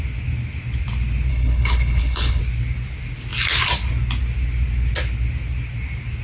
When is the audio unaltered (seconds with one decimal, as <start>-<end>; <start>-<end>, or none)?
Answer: 0.0-1.3; 2.4-6.2